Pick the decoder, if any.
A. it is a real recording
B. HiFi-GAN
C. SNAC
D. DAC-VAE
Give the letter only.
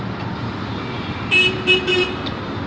A